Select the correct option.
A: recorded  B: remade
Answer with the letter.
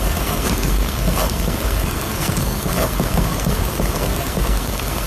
B